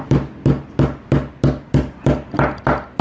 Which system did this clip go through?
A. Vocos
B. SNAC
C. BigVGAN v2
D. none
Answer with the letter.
D